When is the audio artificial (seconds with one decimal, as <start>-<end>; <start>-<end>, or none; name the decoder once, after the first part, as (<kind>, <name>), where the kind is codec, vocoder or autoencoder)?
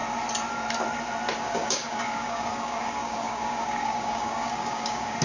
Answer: 1.4-5.2 (codec, DAC)